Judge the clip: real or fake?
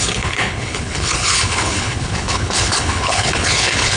fake